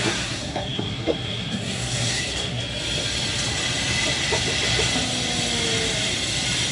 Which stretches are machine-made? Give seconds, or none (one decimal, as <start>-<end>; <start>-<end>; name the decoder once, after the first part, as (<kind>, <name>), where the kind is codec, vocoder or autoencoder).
0.0-2.6 (codec, SNAC)

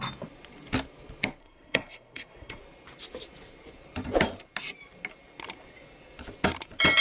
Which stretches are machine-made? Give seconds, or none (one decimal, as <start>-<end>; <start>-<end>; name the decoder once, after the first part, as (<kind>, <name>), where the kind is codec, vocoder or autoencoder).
1.4-2.6 (codec, SNAC)

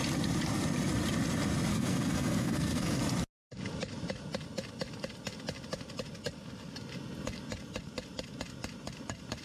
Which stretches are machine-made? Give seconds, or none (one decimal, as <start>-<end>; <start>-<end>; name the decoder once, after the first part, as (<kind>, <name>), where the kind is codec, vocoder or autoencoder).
1.7-3.0 (codec, SNAC)